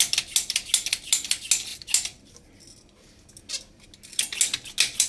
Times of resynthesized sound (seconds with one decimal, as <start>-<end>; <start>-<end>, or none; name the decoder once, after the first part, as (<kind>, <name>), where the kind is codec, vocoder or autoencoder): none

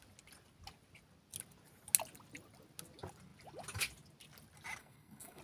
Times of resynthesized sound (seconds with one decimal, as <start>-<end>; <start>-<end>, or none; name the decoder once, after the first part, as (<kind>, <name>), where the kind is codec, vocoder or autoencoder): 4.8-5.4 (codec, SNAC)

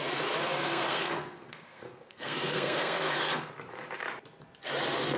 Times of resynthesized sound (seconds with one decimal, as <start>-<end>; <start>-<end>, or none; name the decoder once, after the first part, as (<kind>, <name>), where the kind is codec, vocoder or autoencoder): 0.4-3.5 (codec, SNAC)